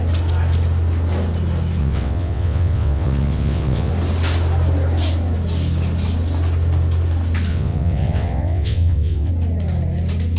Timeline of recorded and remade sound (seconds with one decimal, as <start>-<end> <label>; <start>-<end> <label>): 0.0-1.8 recorded; 1.8-3.9 remade; 3.9-7.5 recorded; 7.5-9.3 remade; 9.3-10.4 recorded